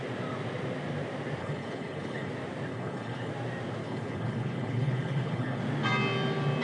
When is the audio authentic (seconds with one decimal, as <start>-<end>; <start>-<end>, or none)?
0.0-1.4; 2.3-2.7; 3.3-3.8; 5.6-6.6